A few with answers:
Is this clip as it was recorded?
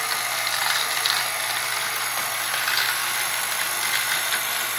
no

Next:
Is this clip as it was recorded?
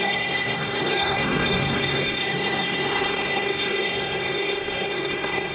no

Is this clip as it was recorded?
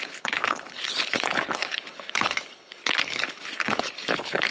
no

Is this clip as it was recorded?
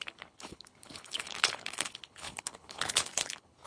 no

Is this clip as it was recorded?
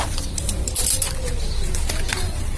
yes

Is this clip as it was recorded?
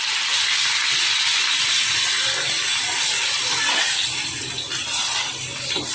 yes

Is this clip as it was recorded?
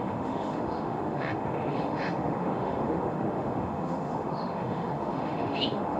no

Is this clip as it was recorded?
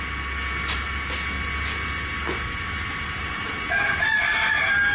yes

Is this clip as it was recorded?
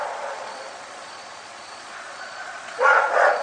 no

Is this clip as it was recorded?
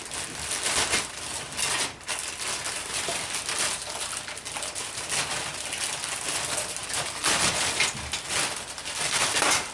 yes